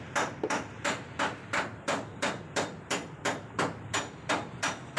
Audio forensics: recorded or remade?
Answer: remade